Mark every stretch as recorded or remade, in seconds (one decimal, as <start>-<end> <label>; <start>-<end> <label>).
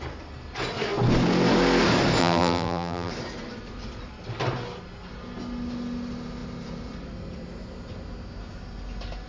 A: 0.0-2.2 recorded; 2.2-3.1 remade; 3.1-9.3 recorded